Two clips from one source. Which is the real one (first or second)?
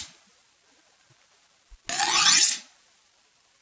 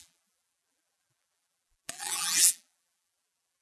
first